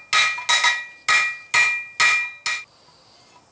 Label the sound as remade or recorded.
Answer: recorded